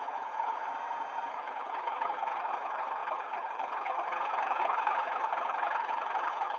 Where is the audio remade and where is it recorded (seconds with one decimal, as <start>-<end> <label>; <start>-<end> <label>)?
0.0-0.7 remade; 0.7-1.3 recorded; 1.3-6.6 remade